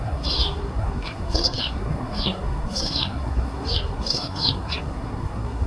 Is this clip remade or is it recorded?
remade